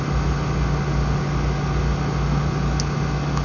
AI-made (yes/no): no